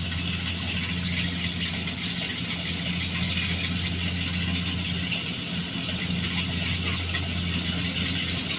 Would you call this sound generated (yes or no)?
no